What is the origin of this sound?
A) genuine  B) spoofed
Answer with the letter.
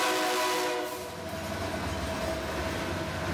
A